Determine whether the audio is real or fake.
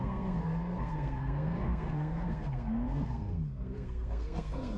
fake